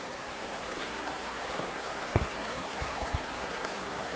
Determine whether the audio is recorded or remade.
remade